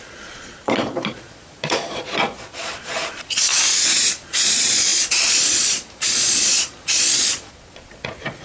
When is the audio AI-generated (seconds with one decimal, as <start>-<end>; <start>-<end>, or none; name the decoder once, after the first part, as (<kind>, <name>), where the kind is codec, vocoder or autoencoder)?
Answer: 0.0-3.5 (vocoder, Vocos); 4.3-8.4